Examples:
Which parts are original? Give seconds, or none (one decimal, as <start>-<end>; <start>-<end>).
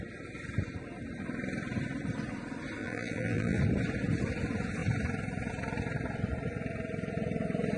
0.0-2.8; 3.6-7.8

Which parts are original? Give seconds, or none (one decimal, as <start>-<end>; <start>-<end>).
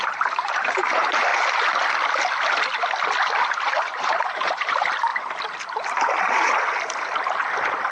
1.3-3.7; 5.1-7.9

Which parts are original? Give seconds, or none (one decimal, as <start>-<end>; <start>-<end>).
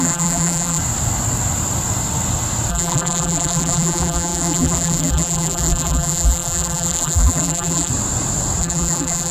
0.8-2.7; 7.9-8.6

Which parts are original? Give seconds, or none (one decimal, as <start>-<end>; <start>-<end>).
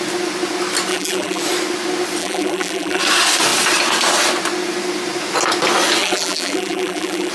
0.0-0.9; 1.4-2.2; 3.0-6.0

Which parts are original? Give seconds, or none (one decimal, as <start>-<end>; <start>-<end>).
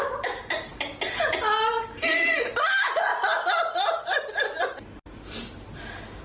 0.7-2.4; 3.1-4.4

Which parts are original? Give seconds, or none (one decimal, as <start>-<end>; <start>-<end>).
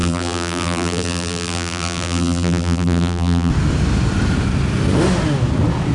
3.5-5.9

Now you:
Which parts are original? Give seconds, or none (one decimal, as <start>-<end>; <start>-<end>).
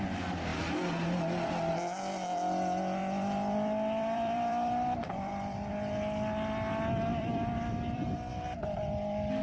0.0-3.0; 5.7-7.1; 8.3-9.4